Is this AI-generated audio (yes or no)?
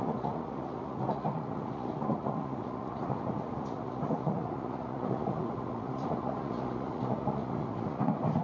yes